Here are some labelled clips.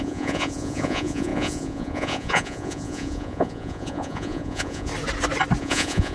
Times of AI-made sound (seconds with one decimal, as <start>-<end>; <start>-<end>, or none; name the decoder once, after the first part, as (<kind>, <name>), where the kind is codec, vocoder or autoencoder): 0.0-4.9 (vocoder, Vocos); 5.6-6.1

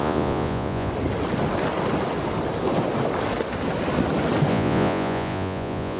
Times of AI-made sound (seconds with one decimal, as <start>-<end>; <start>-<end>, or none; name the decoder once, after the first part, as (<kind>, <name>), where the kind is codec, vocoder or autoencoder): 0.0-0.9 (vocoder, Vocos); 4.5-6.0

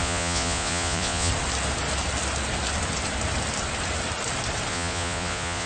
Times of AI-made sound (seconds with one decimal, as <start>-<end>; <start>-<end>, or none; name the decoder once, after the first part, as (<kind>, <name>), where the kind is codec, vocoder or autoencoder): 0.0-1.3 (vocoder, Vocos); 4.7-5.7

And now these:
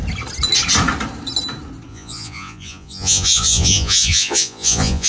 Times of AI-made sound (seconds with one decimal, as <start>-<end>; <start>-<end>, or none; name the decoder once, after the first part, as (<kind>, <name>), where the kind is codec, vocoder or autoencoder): 1.9-5.1 (vocoder, Vocos)

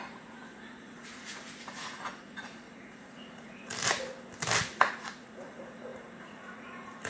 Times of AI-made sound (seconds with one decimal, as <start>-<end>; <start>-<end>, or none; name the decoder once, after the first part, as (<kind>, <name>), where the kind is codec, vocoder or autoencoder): 0.0-3.7 (vocoder, Vocos); 4.6-7.1

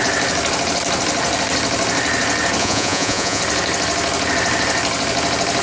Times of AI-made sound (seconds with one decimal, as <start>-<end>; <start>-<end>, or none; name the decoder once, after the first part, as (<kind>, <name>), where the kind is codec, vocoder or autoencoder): 2.6-3.4 (vocoder, Vocos)

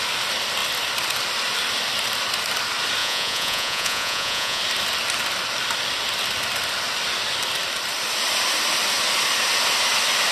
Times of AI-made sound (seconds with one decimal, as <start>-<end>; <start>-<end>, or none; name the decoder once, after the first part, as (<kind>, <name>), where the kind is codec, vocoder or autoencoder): 3.0-4.6 (vocoder, Vocos)

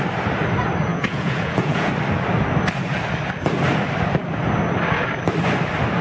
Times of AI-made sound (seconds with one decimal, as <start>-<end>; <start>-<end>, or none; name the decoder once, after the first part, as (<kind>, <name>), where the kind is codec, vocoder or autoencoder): 0.9-1.9 (vocoder, Vocos)